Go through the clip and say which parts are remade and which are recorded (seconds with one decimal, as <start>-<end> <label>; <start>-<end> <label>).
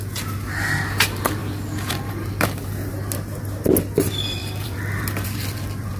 0.0-1.4 recorded; 1.4-2.9 remade; 2.9-4.4 recorded; 4.4-6.0 remade